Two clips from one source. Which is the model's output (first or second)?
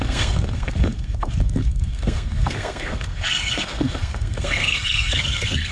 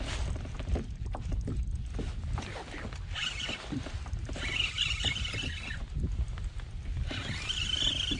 first